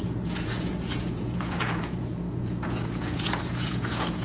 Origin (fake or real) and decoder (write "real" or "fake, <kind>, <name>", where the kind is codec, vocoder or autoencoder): fake, vocoder, Vocos